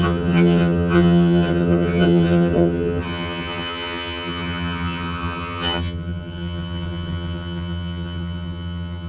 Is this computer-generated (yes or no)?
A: yes